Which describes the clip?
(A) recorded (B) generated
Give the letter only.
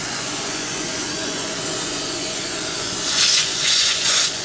B